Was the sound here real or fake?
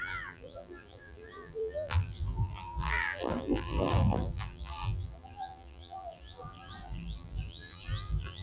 fake